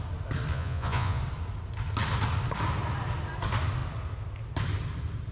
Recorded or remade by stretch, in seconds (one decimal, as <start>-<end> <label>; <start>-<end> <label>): 0.0-0.5 recorded; 0.5-1.2 remade; 1.2-5.3 recorded